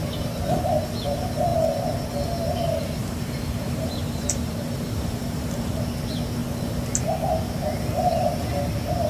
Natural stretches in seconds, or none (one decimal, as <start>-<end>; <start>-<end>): 0.0-3.0; 5.8-9.1